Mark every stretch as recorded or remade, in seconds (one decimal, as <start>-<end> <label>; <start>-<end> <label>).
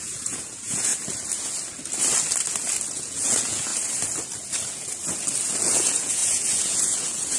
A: 0.0-0.9 remade; 0.9-2.9 recorded; 2.9-3.7 remade; 3.7-5.6 recorded; 5.6-7.4 remade